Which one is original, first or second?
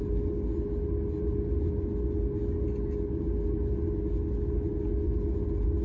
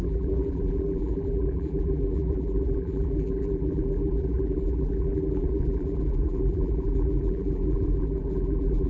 first